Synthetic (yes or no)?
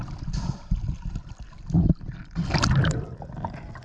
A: no